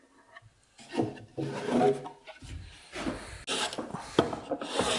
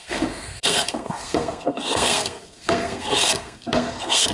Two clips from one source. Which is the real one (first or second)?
first